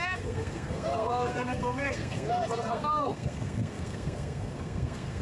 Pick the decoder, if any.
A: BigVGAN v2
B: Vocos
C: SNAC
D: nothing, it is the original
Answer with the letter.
C